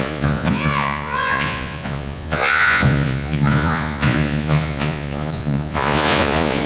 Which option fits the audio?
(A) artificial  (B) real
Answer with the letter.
A